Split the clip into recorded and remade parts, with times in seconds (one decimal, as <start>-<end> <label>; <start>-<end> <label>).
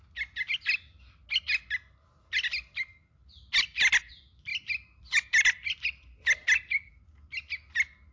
0.0-4.5 recorded; 4.5-6.9 remade; 6.9-8.1 recorded